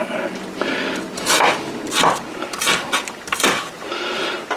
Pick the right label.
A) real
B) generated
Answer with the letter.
A